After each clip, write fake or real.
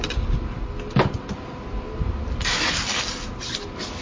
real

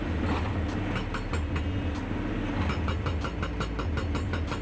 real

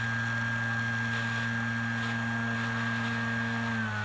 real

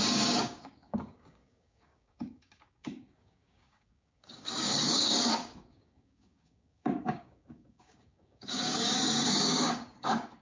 fake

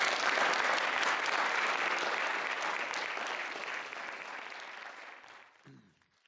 real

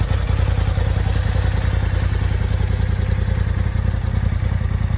real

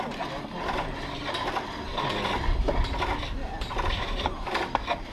real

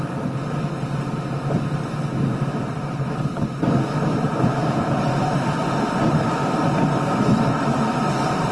real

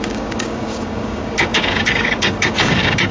fake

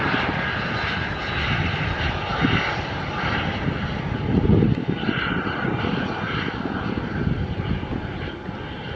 real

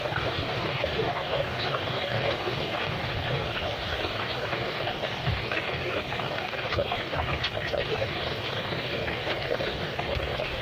fake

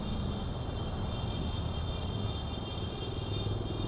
real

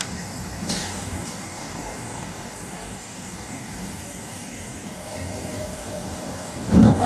fake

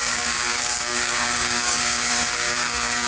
fake